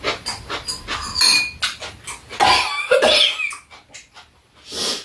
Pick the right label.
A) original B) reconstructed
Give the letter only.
A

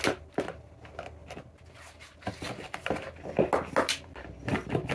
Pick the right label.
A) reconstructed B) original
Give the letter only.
B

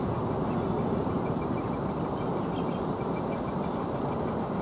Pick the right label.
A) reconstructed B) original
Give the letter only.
B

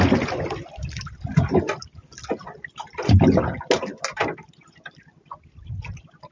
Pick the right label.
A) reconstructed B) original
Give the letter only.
B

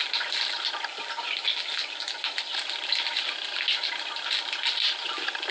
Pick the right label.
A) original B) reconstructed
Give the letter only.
A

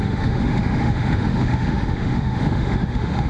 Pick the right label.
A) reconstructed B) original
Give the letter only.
A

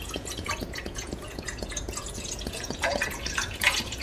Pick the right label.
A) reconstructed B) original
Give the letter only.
A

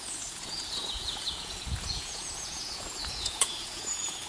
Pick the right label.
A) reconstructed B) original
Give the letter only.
A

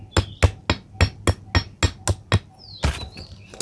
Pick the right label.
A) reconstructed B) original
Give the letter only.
B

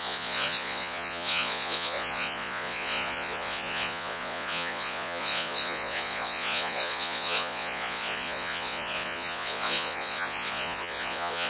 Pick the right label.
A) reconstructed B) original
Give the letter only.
A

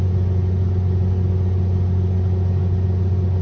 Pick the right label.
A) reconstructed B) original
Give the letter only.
B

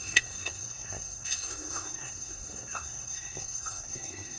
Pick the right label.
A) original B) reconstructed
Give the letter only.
B